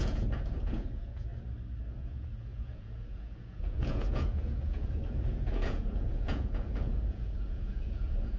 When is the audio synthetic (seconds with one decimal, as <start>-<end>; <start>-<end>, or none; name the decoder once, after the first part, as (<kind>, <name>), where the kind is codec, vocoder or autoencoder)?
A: 0.0-1.3 (vocoder, Vocos); 1.9-8.4